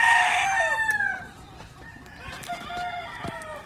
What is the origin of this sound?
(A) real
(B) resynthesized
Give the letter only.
B